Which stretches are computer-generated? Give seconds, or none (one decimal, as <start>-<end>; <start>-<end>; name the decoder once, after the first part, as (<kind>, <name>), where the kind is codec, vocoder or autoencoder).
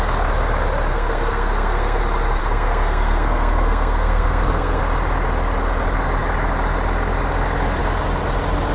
0.9-2.0 (codec, SNAC); 2.4-4.8